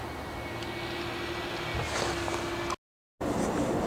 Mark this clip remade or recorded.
recorded